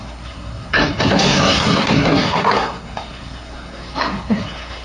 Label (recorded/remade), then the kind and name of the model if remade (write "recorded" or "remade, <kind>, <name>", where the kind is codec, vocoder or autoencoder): remade, codec, SNAC